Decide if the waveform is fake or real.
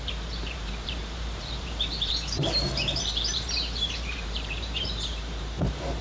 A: fake